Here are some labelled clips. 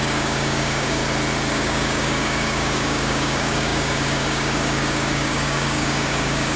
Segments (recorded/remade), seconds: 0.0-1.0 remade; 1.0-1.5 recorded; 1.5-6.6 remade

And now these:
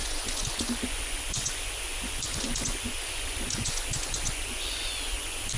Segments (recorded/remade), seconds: 0.0-5.6 remade

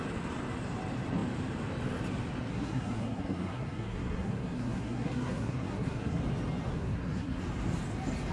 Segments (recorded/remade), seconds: 0.0-2.5 recorded; 2.5-6.2 remade; 6.2-6.7 recorded; 6.7-7.4 remade; 7.4-8.3 recorded

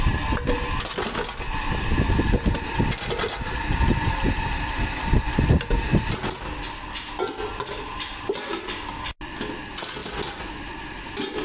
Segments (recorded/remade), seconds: 0.0-11.4 recorded

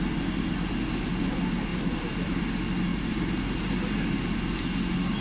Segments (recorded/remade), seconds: 0.0-1.7 recorded; 1.7-2.4 remade; 2.4-2.9 recorded; 2.9-3.7 remade; 3.7-5.2 recorded

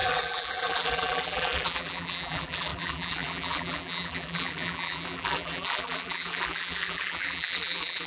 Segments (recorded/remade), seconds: 0.0-8.1 remade